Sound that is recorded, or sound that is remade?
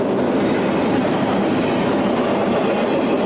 recorded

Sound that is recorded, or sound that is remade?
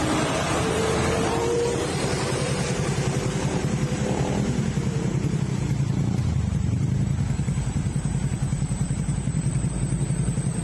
remade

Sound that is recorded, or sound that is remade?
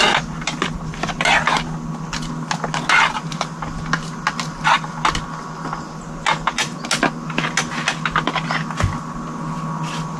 recorded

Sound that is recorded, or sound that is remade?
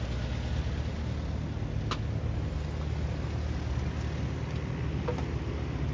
recorded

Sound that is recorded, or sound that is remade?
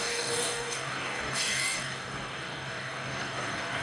remade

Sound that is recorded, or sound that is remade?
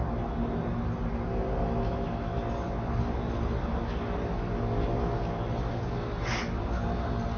recorded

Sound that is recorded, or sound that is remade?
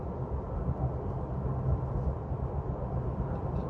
recorded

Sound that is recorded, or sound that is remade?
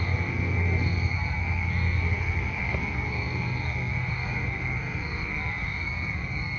remade